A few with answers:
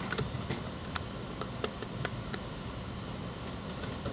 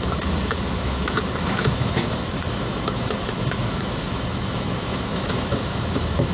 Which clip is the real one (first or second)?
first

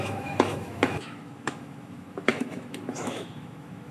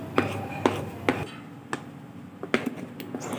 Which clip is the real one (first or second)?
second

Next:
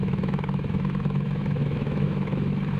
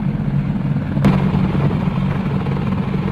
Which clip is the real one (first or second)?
second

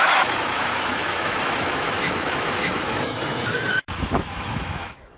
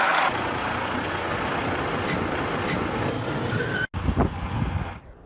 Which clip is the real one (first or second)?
second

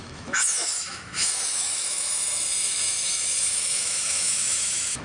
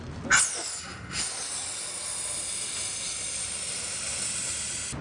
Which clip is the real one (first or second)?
second